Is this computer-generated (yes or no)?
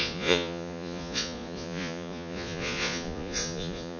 yes